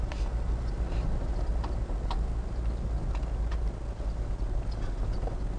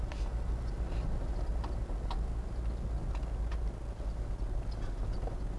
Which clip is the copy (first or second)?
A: first